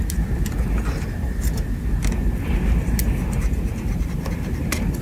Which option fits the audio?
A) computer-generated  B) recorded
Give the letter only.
B